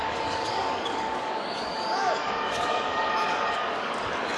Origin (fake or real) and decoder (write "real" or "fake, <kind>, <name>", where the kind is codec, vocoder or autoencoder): fake, codec, DAC